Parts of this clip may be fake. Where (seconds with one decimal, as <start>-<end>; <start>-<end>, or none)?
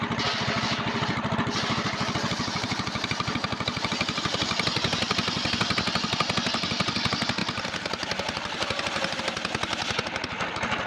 none